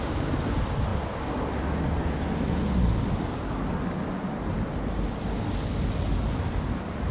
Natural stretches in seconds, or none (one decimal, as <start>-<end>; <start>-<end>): 0.0-7.1